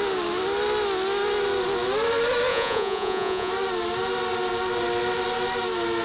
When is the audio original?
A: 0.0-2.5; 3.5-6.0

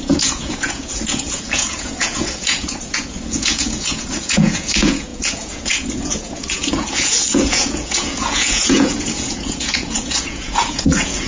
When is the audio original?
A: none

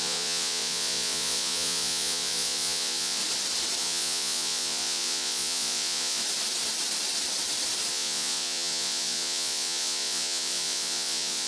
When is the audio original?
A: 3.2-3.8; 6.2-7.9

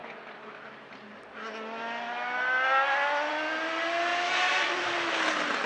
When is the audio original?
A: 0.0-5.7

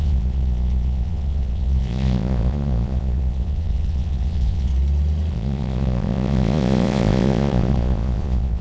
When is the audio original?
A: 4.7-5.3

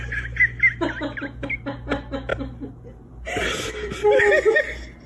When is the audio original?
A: 0.0-5.1

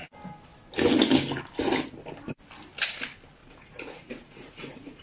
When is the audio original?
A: 0.0-3.4

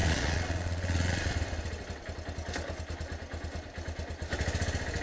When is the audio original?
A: 1.3-5.0